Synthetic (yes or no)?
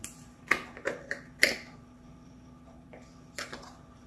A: yes